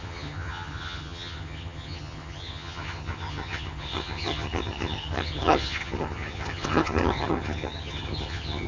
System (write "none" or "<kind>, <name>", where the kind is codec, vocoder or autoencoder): vocoder, HiFi-GAN